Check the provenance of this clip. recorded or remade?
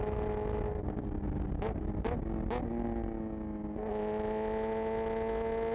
recorded